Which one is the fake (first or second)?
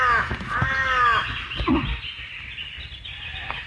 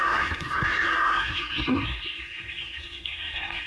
second